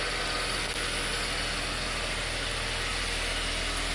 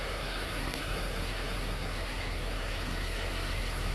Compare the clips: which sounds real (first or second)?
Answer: first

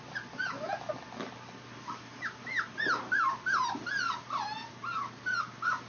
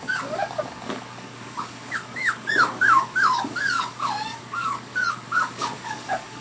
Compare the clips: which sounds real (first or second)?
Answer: first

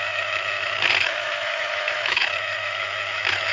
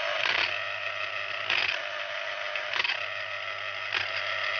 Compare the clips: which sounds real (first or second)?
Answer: second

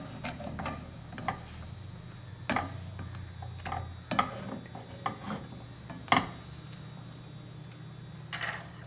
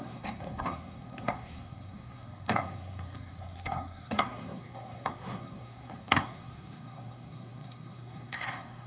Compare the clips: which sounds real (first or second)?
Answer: first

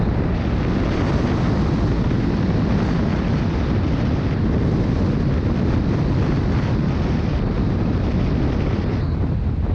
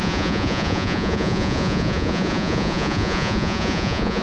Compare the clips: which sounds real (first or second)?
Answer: first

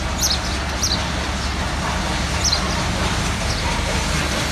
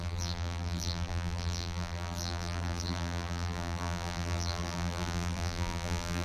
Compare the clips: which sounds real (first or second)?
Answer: first